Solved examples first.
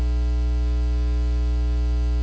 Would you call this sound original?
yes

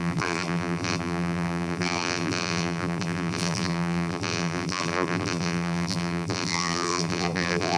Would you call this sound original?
no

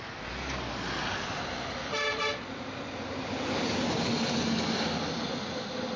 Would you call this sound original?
yes